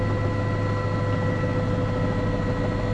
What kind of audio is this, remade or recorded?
recorded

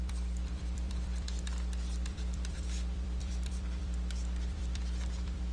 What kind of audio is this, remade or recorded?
remade